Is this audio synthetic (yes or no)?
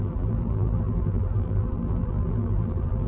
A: yes